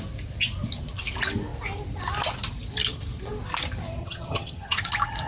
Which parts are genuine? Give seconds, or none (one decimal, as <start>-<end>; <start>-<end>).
0.0-4.0; 4.8-5.3